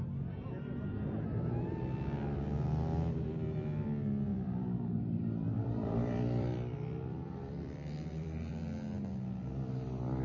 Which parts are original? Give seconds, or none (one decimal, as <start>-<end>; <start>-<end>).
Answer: 0.0-4.3; 8.5-10.2